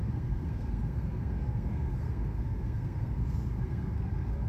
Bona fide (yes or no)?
no